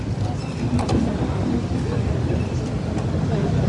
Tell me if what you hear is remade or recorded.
remade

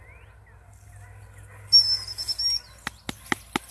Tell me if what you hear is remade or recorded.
recorded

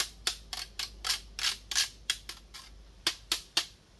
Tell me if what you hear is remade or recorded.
recorded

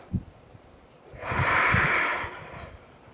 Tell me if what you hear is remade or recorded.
remade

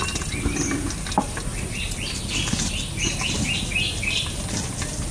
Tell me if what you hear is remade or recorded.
recorded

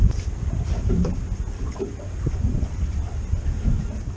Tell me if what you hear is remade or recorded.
recorded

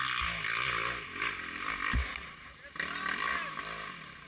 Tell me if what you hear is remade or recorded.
recorded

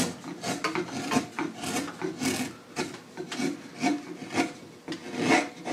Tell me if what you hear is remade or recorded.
recorded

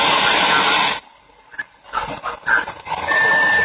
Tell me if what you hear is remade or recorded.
remade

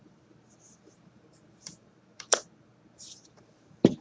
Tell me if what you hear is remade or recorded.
remade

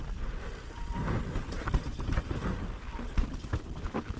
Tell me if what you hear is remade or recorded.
remade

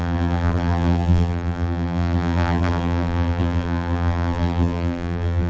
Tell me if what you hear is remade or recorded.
remade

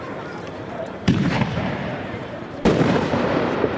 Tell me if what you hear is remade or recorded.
remade